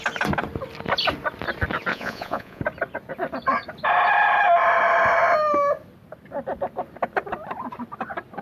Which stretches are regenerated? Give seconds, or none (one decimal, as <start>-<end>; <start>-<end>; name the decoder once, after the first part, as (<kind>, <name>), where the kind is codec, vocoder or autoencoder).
1.9-2.6 (vocoder, Vocos)